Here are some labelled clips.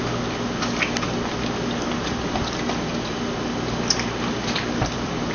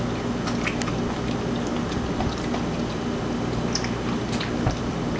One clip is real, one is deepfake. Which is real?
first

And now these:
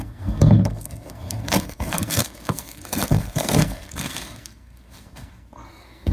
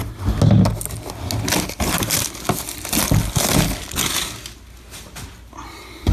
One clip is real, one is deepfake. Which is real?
second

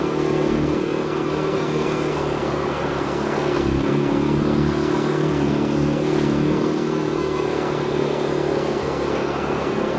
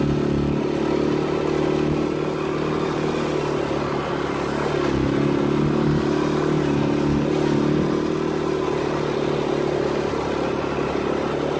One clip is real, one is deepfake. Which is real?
second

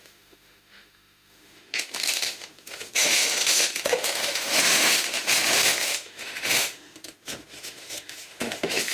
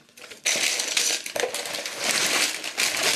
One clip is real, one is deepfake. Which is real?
second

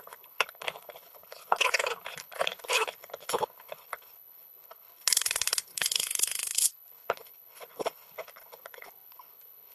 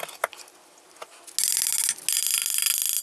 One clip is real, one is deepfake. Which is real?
second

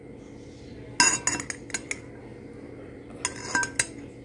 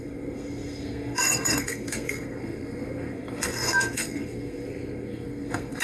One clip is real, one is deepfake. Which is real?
first